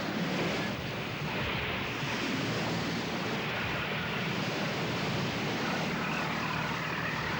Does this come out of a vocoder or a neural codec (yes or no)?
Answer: no